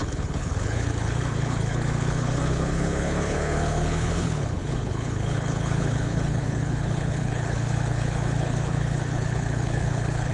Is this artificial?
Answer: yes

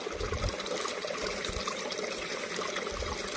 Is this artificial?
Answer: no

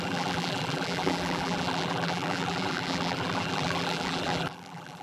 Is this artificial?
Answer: yes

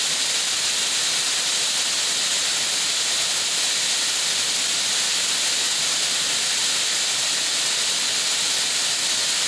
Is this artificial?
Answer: no